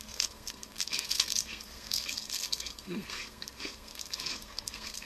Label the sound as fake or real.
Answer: fake